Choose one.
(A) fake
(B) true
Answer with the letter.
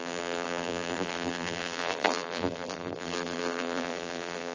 A